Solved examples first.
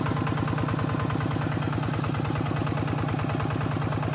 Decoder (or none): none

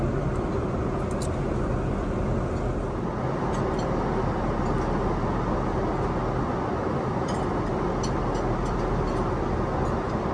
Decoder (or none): none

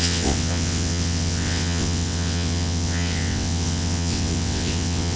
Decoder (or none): vocoder, WaveNeXt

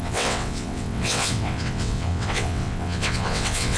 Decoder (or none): vocoder, WaveNeXt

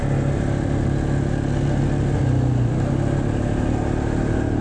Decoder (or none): none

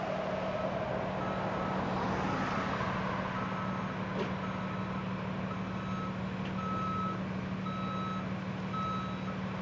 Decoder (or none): none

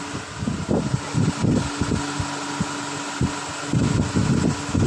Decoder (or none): none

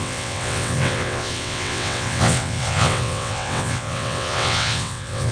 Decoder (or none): vocoder, WaveNeXt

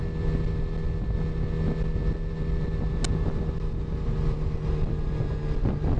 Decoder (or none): none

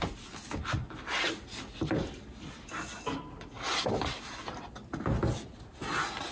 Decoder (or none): none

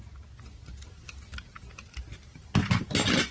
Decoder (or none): none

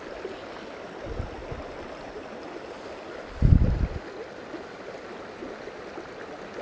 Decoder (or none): none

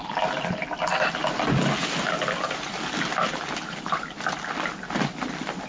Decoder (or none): none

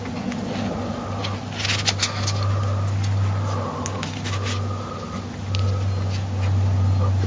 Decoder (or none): none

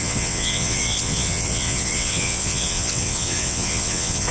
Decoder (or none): vocoder, WaveNeXt